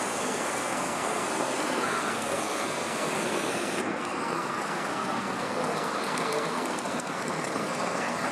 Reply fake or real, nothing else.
fake